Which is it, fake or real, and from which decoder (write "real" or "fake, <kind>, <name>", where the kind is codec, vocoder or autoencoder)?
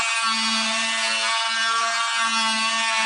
real